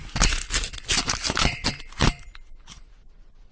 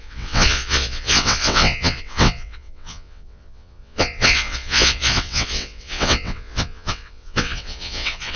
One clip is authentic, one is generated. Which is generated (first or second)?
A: second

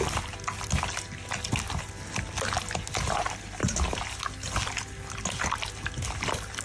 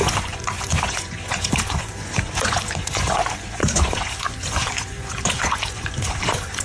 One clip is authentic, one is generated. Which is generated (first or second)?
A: second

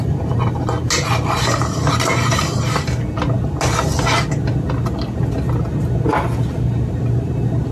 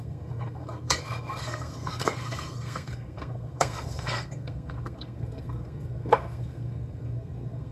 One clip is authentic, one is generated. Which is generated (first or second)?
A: second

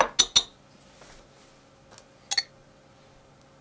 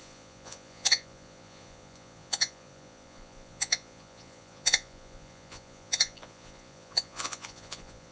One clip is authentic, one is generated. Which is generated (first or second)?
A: second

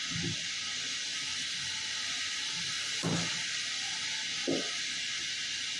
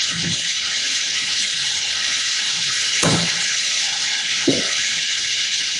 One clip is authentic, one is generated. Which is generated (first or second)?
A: second